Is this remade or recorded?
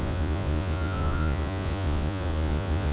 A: remade